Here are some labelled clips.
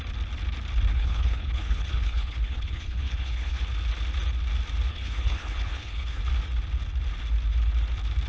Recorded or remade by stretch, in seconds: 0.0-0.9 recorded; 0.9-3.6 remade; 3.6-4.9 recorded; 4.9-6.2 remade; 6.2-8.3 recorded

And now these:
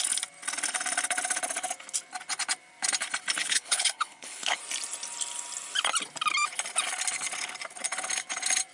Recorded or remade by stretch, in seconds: 0.0-3.4 recorded; 3.4-4.6 remade; 4.6-8.7 recorded

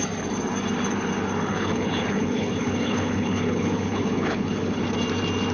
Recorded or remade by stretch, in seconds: 0.0-1.5 recorded; 1.5-4.8 remade; 4.8-5.5 recorded

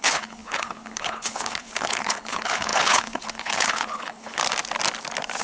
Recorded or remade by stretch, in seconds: 0.0-4.4 remade; 4.4-5.4 recorded

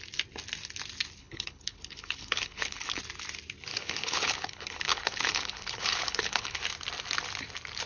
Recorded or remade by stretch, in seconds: 0.0-1.2 recorded; 1.2-3.0 remade; 3.0-3.7 recorded; 3.7-6.6 remade; 6.6-7.9 recorded

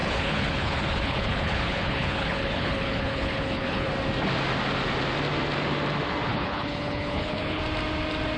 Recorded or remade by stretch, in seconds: 0.0-3.9 remade; 3.9-6.3 recorded; 6.3-7.6 remade; 7.6-8.4 recorded

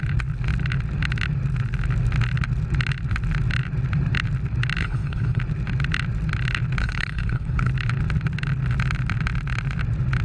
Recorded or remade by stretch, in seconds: 0.0-4.8 recorded; 4.8-5.4 remade; 5.4-6.8 recorded; 6.8-7.7 remade; 7.7-10.2 recorded

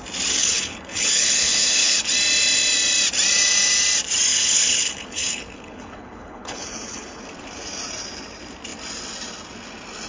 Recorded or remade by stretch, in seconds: 0.0-0.4 recorded; 0.4-2.1 remade; 2.1-4.3 recorded; 4.3-7.2 remade; 7.2-10.1 recorded